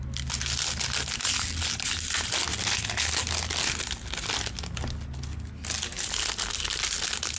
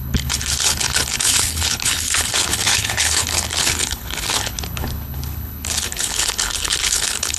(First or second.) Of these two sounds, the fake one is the second